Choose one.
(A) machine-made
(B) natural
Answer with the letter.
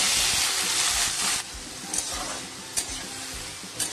B